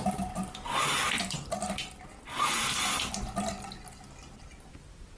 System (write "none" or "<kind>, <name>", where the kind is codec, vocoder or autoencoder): none